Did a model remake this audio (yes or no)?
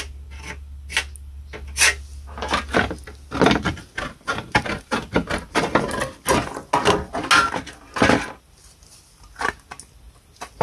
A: no